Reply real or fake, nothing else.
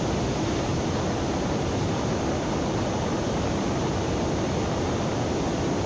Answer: real